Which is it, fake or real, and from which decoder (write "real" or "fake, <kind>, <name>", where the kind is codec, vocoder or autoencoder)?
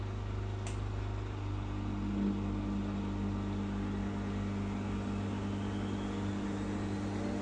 real